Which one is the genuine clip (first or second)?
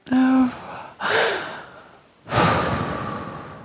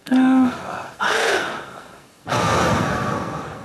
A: first